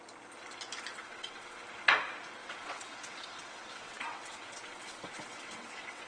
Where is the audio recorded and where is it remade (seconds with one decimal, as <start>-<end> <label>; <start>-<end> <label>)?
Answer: 0.0-0.9 recorded; 0.9-1.6 remade; 1.6-2.4 recorded; 2.4-6.1 remade